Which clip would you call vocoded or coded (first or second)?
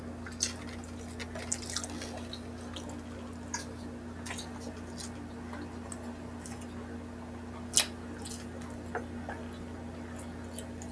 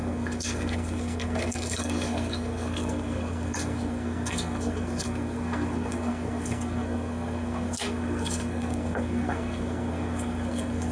second